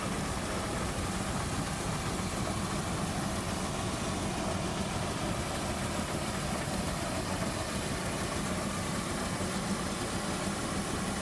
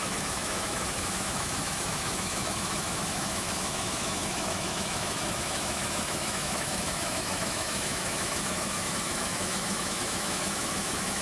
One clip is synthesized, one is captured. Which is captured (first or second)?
first